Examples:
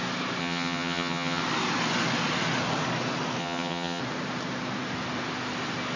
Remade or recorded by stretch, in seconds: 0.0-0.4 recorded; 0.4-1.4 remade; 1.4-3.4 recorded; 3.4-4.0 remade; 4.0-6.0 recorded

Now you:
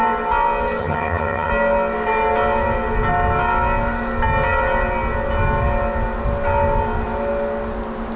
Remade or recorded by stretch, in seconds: 0.0-0.8 recorded; 0.8-1.5 remade; 1.5-8.2 recorded

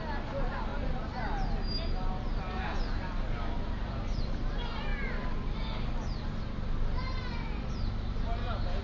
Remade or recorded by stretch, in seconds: 0.0-8.8 recorded

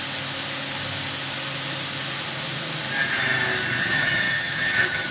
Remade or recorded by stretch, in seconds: 0.0-3.8 recorded; 3.8-5.1 remade

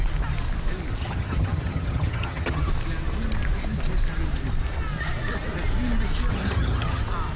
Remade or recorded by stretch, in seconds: 0.0-1.0 recorded; 1.0-2.7 remade; 2.7-6.3 recorded; 6.3-7.0 remade; 7.0-7.4 recorded

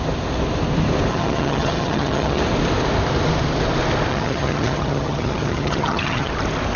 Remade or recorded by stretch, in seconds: 0.0-1.1 recorded; 1.1-2.4 remade; 2.4-4.1 recorded; 4.1-6.3 remade; 6.3-6.8 recorded

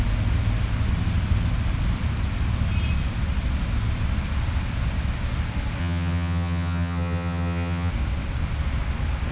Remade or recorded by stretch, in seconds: 0.0-5.8 recorded; 5.8-7.9 remade; 7.9-9.3 recorded

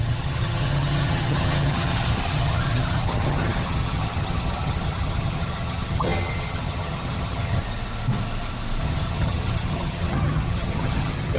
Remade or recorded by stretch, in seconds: 0.0-7.6 remade; 7.6-8.8 recorded; 8.8-11.4 remade